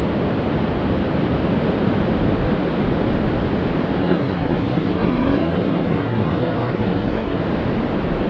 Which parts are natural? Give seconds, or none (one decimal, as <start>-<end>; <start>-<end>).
0.0-4.0; 7.4-8.3